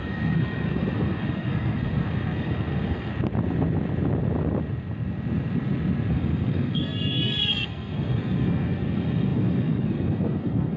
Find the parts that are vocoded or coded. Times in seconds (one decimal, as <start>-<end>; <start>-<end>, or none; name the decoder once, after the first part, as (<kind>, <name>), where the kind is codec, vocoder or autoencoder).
0.0-3.1 (codec, SNAC); 6.1-10.8